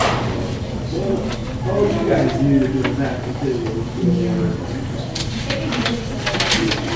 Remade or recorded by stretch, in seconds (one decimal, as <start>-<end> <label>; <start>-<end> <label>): 0.0-1.4 remade; 1.4-5.6 recorded; 5.6-7.0 remade

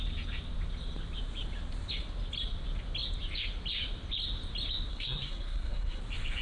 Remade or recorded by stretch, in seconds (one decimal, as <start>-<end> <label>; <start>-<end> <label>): 0.0-4.9 recorded; 4.9-6.0 remade; 6.0-6.4 recorded

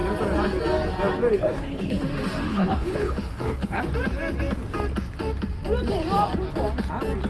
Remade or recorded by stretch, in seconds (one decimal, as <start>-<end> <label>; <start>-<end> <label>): 0.0-1.3 recorded; 1.3-2.0 remade; 2.0-2.5 recorded; 2.5-3.8 remade; 3.8-7.3 recorded

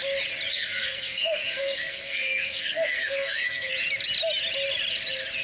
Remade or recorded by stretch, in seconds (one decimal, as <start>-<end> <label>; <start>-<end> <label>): 0.0-0.5 recorded; 0.5-3.7 remade; 3.7-5.4 recorded

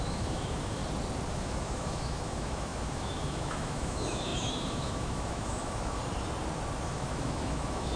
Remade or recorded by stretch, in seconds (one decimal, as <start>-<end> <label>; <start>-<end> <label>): 0.0-0.8 remade; 0.8-1.3 recorded; 1.3-6.0 remade; 6.0-6.9 recorded; 6.9-8.0 remade